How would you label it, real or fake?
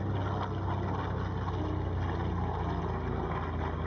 real